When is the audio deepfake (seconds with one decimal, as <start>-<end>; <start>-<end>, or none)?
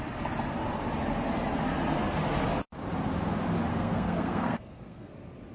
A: 3.7-5.1